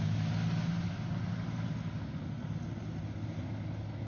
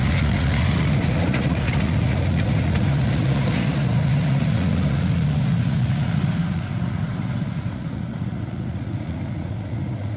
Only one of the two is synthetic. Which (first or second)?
second